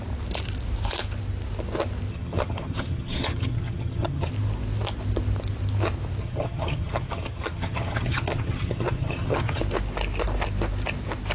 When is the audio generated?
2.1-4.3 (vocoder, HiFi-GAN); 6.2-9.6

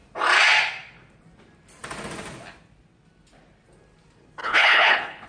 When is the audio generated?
4.4-5.3 (codec, HILCodec)